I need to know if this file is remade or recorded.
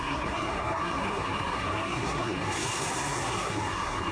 remade